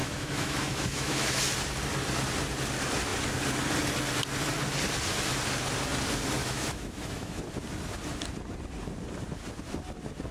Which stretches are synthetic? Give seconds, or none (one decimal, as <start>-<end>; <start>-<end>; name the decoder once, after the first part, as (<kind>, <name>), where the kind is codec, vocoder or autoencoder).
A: 0.0-1.4 (autoencoder, DAC-VAE); 6.4-7.4